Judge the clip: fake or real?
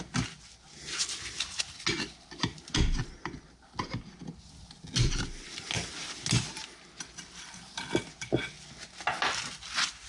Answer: real